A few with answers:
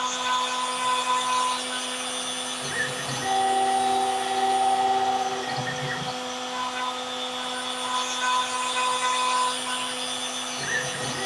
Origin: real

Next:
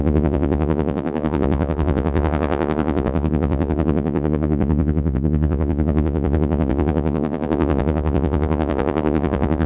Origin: fake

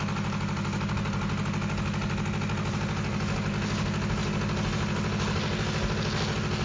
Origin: real